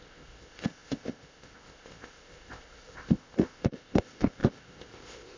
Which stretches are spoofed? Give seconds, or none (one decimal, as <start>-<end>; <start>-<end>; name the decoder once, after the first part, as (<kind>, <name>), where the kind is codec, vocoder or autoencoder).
0.0-5.4 (codec, ZipCodec)